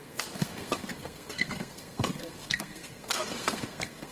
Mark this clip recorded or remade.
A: remade